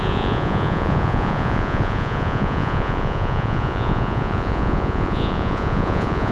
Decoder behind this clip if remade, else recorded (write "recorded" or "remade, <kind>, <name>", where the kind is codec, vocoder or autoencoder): remade, vocoder, Vocos